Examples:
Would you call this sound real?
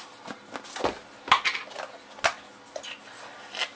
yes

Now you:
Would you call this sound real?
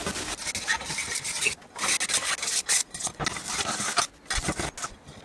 yes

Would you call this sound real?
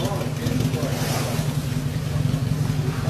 yes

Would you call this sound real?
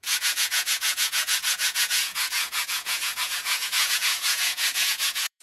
no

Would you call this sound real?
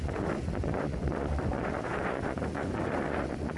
no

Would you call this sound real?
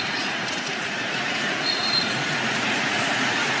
no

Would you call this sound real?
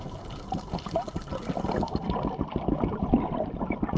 yes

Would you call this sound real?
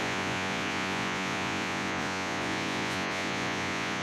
no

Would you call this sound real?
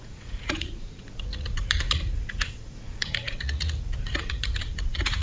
no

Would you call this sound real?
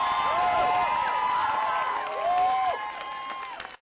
yes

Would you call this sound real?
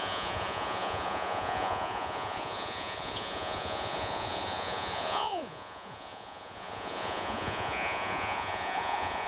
no